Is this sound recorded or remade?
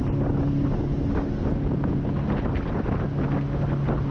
recorded